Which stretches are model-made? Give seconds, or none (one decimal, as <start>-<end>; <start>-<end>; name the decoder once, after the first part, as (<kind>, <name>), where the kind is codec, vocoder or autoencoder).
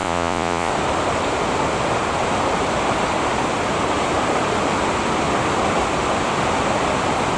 0.0-0.7 (vocoder, Vocos)